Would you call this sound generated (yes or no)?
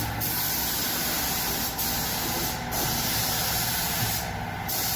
no